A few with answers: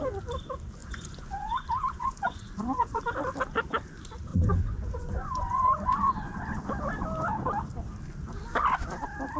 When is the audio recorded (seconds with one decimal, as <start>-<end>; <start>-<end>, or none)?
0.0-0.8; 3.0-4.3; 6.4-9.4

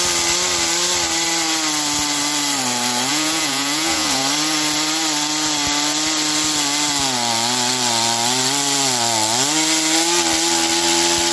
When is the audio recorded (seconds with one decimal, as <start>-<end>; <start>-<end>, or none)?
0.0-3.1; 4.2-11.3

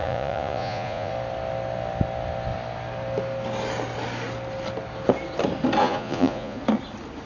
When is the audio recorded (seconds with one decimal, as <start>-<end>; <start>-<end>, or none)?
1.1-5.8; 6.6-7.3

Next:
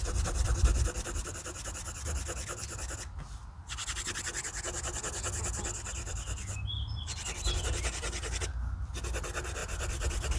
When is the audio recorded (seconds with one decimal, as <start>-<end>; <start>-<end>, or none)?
0.0-10.4

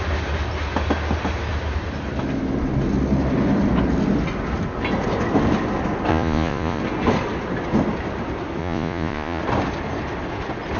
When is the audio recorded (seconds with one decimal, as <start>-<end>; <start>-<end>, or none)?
0.0-6.1; 6.8-8.6; 9.4-10.8

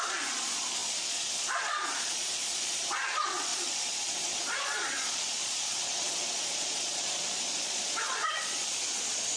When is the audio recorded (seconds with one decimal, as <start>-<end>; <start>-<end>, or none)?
none